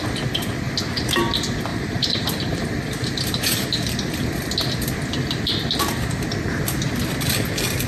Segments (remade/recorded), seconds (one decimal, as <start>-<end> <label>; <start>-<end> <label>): 0.0-1.7 recorded; 1.7-3.8 remade; 3.8-7.9 recorded